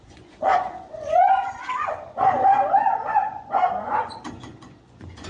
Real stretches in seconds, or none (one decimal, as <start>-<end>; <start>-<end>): none